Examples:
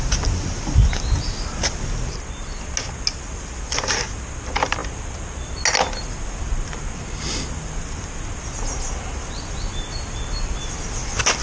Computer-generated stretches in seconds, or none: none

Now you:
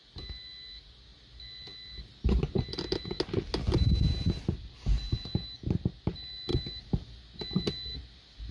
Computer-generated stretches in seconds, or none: none

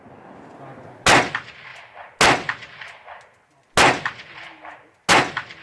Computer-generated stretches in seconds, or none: none

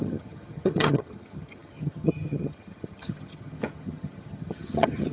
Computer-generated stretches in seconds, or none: 0.0-5.1 (vocoder, HiFi-GAN)

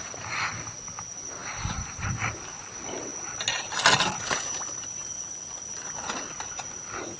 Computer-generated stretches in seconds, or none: none

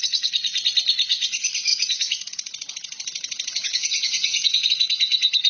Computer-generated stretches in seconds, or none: 1.7-4.7 (vocoder, Vocos)

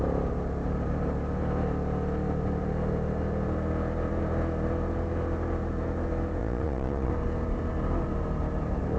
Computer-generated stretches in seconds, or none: 6.4-7.1 (vocoder, Vocos)

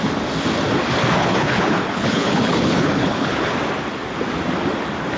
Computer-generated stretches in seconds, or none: 1.2-3.5 (codec, HILCodec)